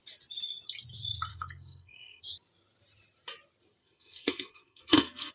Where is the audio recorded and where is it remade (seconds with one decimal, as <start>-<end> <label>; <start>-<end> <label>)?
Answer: 0.0-1.3 recorded; 1.3-2.2 remade; 2.2-3.8 recorded; 3.8-5.3 remade